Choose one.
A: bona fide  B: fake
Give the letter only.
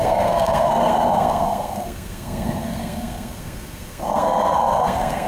B